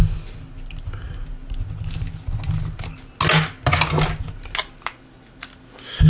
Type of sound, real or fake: real